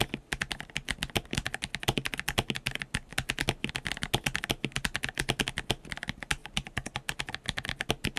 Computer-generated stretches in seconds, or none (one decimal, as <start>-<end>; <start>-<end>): none